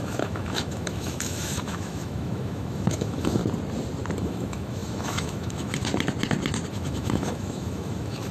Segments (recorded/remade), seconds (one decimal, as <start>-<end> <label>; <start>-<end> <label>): 0.0-3.4 remade; 3.4-4.2 recorded; 4.2-5.9 remade; 5.9-6.7 recorded; 6.7-8.3 remade